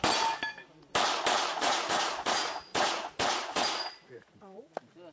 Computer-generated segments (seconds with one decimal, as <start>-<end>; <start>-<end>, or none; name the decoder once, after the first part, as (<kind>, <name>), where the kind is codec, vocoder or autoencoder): 1.5-4.6 (vocoder, Vocos)